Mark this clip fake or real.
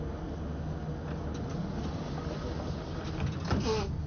real